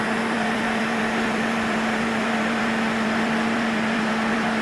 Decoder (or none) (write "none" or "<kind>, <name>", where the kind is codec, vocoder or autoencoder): vocoder, BigVGAN v2